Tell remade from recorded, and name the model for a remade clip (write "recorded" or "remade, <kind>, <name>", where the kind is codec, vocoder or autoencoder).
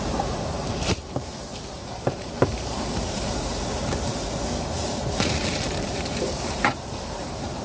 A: remade, vocoder, BigVGAN v2